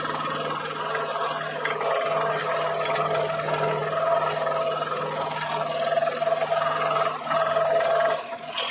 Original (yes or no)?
yes